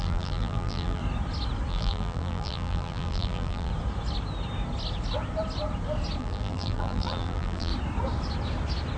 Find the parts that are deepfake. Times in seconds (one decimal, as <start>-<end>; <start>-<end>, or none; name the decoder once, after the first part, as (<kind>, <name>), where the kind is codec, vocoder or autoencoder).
0.0-1.0 (vocoder, BigVGAN v2); 1.7-3.7; 6.2-7.7